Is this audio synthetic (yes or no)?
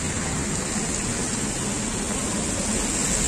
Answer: no